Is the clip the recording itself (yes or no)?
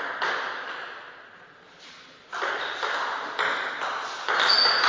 yes